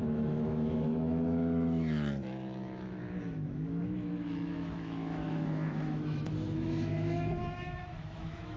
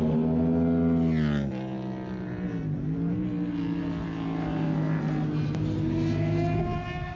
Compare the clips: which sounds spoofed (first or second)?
first